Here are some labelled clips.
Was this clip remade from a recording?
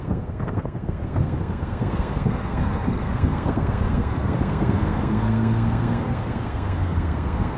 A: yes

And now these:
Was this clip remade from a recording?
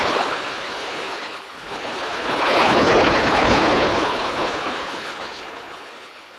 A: yes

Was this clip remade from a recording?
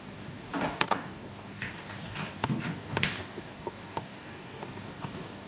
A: yes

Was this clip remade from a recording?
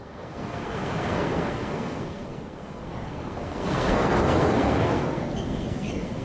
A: yes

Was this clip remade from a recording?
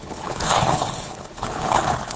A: yes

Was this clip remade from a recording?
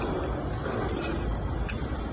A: no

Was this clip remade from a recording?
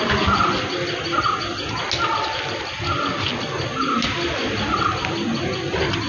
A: no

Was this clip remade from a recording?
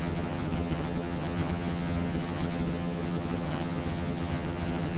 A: yes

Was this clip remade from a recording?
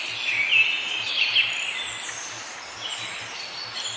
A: no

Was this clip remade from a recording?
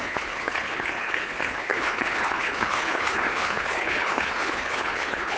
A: yes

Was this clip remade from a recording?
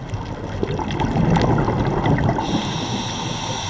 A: no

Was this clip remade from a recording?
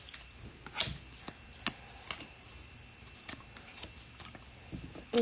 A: no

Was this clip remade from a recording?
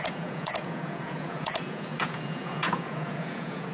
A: yes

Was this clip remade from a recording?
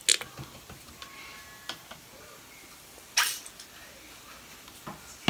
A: no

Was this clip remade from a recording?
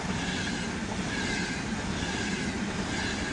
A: no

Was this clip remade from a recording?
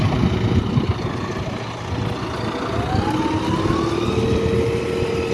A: no